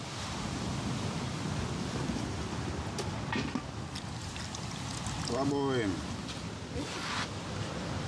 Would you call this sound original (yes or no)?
yes